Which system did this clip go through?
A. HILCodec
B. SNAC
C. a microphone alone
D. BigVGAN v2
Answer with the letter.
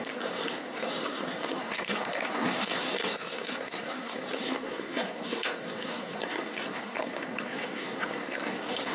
B